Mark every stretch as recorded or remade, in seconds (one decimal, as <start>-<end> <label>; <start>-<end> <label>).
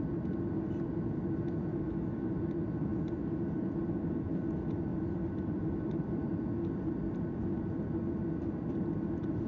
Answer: 0.0-1.7 recorded; 1.7-2.3 remade; 2.3-9.5 recorded